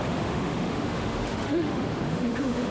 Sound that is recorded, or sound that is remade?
remade